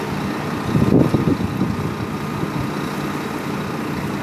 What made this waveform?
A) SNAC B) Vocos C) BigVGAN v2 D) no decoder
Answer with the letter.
D